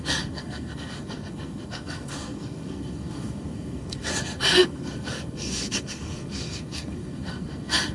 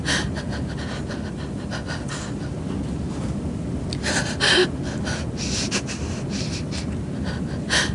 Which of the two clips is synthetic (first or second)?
first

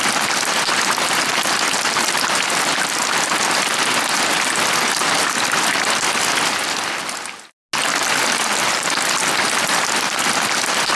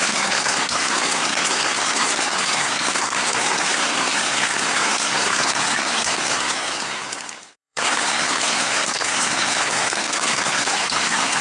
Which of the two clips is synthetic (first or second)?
second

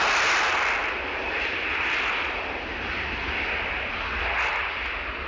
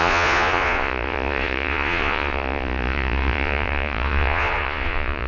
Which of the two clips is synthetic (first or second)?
second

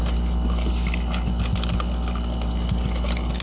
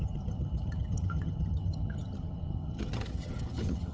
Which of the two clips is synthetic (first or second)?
second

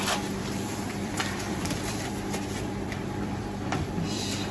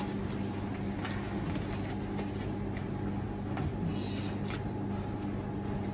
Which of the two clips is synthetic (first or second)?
first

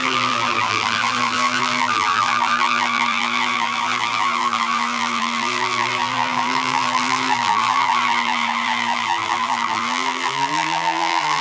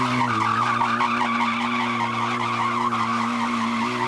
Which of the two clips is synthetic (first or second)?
first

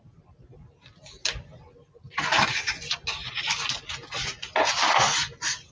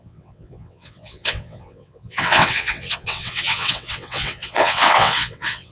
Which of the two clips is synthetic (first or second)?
second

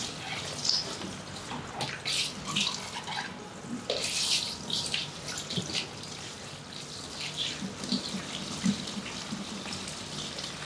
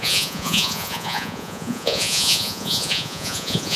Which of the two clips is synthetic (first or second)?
second